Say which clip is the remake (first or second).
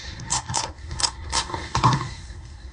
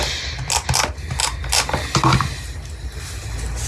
first